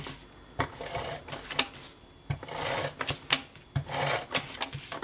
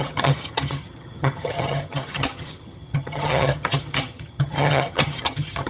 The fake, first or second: second